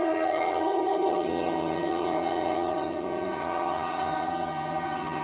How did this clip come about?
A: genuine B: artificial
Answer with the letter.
B